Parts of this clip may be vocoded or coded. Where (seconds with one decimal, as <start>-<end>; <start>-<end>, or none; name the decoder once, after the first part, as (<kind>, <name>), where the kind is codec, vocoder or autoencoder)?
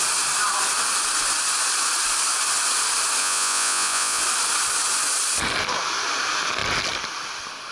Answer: 3.2-4.2 (vocoder, Vocos)